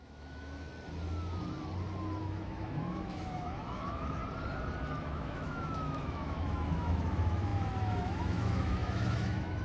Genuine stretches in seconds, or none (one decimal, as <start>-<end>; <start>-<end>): 0.7-2.2; 4.2-5.0